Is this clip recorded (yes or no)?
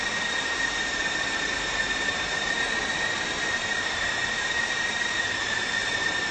no